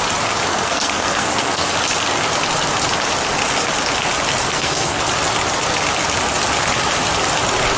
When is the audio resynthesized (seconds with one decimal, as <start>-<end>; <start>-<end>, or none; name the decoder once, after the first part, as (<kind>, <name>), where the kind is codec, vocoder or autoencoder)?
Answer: 0.5-1.7 (codec, SNAC); 4.5-5.0